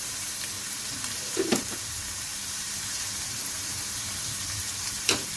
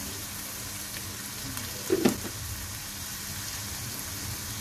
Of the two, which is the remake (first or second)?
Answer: first